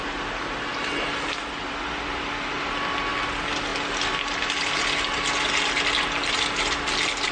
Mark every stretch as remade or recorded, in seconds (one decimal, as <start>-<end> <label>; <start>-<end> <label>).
0.0-7.3 recorded